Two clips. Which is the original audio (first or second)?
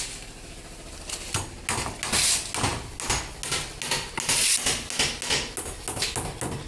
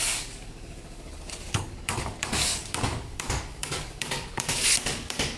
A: first